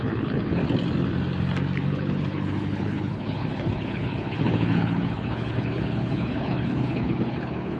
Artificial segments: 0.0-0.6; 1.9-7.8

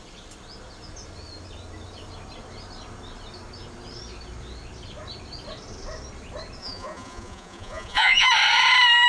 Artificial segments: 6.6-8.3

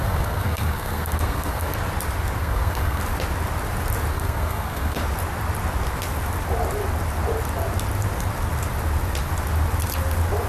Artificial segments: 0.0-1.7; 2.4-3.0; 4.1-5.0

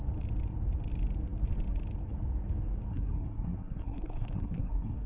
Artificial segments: 2.9-5.1